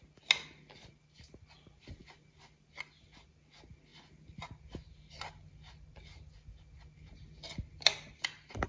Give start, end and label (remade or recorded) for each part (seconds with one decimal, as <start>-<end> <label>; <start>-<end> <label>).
0.0-8.7 recorded